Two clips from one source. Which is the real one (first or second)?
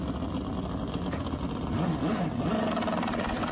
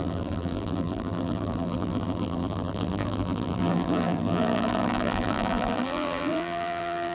first